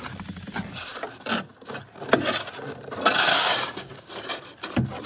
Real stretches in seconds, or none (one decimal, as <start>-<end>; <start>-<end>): 0.0-3.3; 4.1-5.1